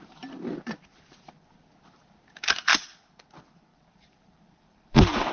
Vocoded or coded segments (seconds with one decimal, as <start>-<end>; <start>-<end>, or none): 3.7-5.3

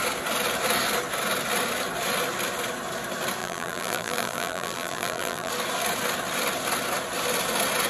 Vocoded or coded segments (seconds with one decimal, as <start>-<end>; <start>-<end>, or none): 3.4-5.5

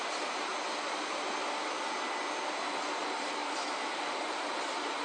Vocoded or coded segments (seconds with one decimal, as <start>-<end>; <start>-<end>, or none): 0.0-0.5; 3.0-5.0

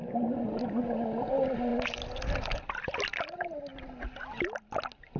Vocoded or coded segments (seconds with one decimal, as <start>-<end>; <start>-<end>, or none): none

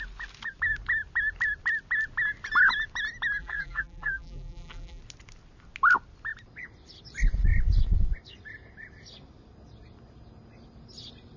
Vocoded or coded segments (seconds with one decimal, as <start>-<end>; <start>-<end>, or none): 3.4-5.0